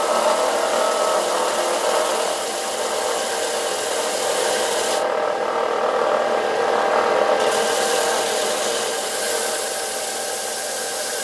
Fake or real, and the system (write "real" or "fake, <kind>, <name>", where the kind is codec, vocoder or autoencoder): real